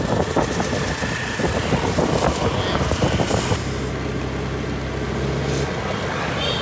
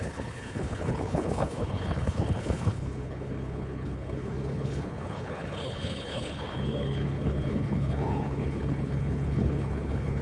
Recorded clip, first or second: first